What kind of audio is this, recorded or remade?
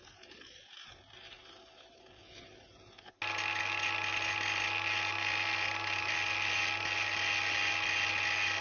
recorded